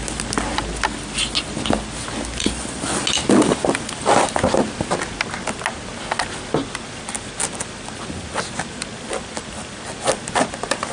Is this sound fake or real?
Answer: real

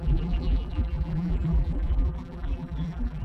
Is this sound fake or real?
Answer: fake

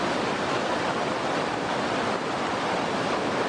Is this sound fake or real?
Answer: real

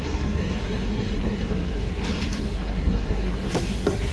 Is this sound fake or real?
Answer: fake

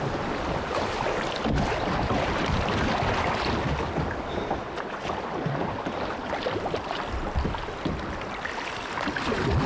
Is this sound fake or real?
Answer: real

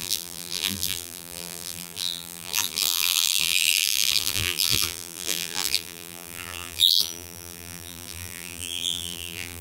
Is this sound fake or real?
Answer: fake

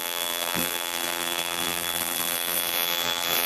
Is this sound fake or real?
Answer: fake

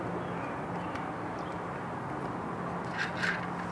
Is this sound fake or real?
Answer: real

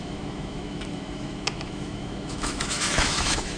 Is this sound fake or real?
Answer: fake